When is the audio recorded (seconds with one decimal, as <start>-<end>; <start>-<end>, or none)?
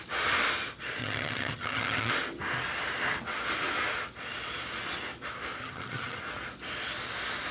0.0-1.0; 2.1-5.6; 6.2-7.5